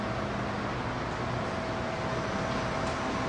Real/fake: real